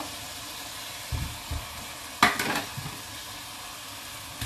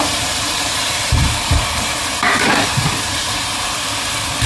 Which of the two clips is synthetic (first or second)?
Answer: second